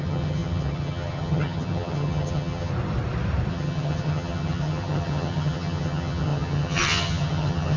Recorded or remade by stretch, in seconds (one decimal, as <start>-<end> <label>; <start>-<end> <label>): 0.0-2.7 remade; 2.7-3.5 recorded; 3.5-7.8 remade